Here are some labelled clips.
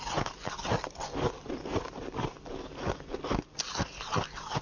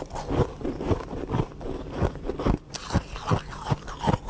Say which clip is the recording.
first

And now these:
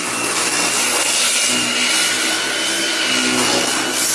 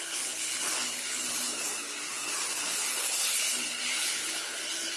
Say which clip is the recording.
first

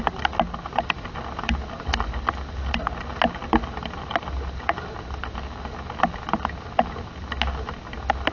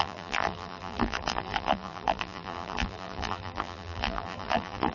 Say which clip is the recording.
first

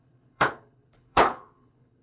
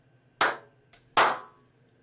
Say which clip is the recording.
second